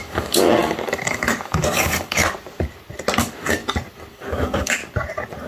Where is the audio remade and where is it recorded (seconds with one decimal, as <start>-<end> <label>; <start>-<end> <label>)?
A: 0.0-2.2 remade; 2.2-3.2 recorded; 3.2-3.6 remade; 3.6-4.1 recorded; 4.1-4.8 remade; 4.8-5.5 recorded